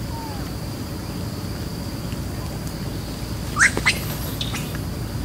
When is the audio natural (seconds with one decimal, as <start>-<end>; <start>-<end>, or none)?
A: 0.0-5.2